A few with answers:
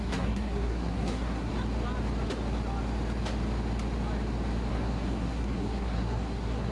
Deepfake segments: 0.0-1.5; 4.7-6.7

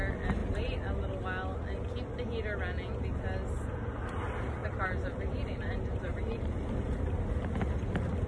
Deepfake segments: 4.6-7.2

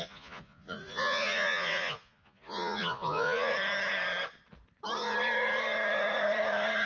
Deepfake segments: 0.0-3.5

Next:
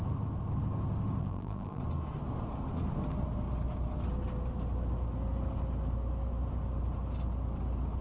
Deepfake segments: 1.2-1.8

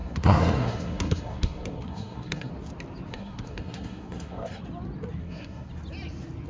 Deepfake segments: 0.0-2.5; 3.1-4.6; 5.2-5.7

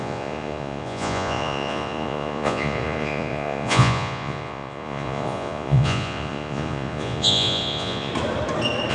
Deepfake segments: 0.0-8.1